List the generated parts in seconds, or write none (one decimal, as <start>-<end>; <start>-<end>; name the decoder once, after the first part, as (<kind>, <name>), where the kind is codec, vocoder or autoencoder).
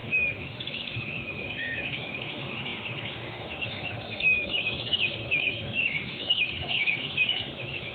0.0-7.9 (autoencoder, DAC-VAE)